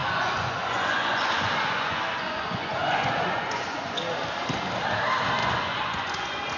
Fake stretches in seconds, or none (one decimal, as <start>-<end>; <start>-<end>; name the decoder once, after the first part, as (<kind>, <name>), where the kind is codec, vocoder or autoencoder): 0.0-4.0 (vocoder, Vocos); 5.4-6.6